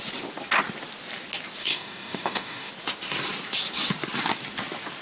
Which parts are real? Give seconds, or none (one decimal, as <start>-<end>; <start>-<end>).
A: 0.0-1.6; 2.7-5.0